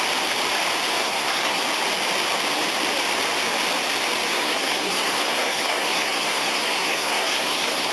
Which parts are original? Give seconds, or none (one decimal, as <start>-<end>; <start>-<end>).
0.0-1.0; 1.6-4.3